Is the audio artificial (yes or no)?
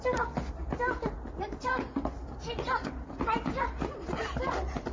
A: no